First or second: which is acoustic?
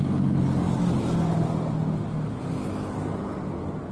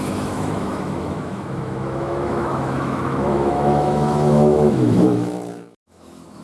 first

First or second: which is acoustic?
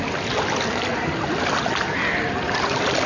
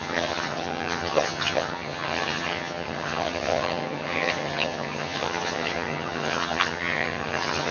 first